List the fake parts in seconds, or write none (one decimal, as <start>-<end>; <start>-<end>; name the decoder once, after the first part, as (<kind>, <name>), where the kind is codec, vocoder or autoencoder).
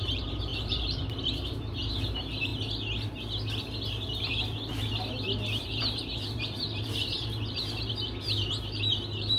0.0-2.5 (vocoder, BigVGAN v2); 5.6-9.4